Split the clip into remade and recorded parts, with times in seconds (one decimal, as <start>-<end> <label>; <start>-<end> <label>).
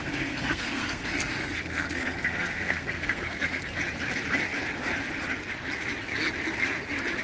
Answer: 0.0-3.6 remade; 3.6-7.2 recorded